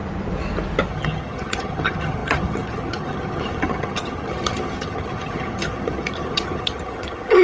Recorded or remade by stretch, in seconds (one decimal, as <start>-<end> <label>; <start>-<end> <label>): 0.0-0.9 recorded; 0.9-7.4 remade